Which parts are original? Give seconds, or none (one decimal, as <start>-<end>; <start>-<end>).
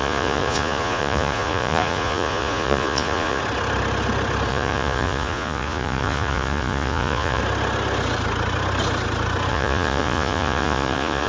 3.4-4.5; 7.4-9.5